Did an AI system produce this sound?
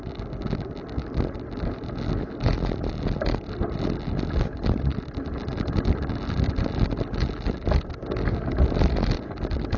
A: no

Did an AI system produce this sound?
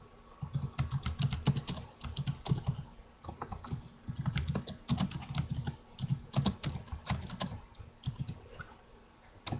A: no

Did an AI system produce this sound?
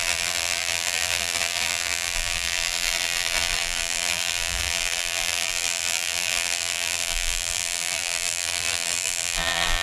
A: yes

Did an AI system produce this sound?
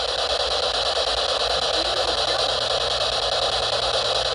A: no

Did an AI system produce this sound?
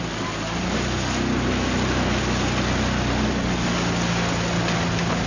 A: no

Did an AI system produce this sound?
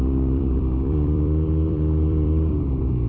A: yes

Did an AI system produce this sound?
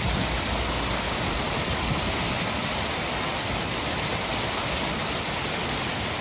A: no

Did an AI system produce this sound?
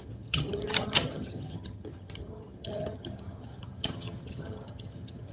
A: yes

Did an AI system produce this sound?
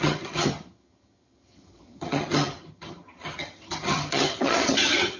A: yes